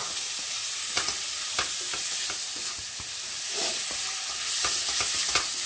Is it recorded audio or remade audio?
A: recorded